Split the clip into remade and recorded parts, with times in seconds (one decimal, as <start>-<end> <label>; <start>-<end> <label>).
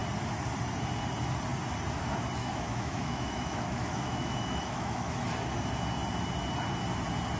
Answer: 0.0-2.4 recorded; 2.4-5.1 remade; 5.1-7.4 recorded